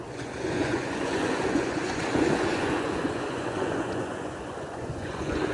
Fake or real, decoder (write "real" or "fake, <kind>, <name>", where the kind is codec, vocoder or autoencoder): fake, vocoder, Vocos